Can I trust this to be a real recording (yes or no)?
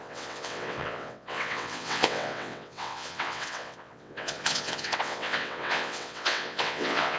no